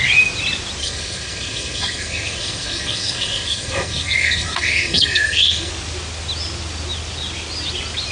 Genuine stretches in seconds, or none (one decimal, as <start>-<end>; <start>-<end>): 0.0-0.8; 5.7-8.1